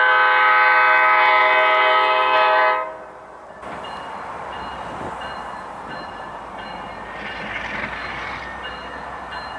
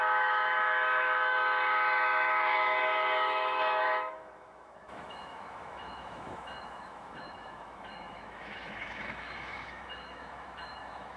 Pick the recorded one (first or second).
first